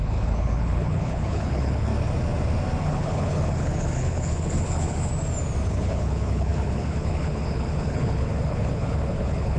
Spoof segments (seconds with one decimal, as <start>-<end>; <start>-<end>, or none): 0.0-1.9; 2.8-5.1; 5.7-9.6